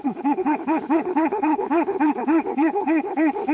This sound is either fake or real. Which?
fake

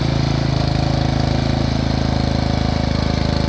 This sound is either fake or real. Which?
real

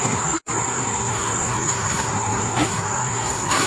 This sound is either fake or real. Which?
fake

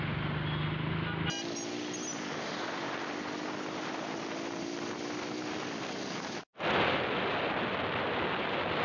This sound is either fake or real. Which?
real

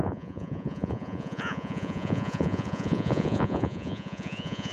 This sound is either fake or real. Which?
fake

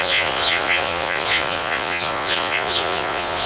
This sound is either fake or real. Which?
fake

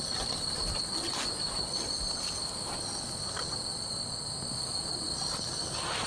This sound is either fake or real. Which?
real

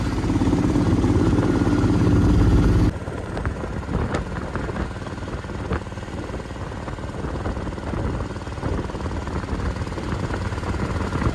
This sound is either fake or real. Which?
real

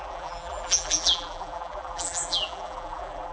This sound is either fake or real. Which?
fake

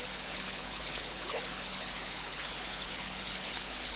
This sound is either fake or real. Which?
fake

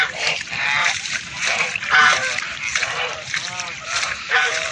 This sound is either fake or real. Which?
fake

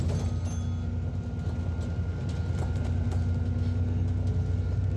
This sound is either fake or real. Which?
real